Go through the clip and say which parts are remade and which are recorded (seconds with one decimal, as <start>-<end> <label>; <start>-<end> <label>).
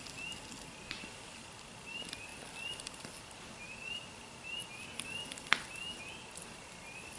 0.0-7.2 recorded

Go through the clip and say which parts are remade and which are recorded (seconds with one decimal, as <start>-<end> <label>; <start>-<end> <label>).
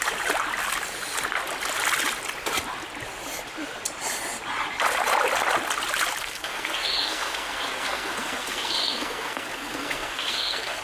0.0-6.2 recorded; 6.2-10.8 remade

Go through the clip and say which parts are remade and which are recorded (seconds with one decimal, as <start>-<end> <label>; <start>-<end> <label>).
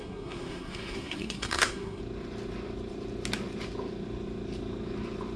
0.0-2.0 remade; 2.0-5.4 recorded